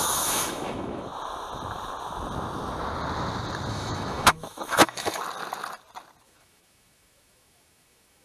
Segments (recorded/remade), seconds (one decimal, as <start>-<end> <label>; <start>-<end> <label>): 0.0-1.1 remade; 1.1-3.7 recorded; 3.7-5.2 remade; 5.2-6.2 recorded; 6.2-8.2 remade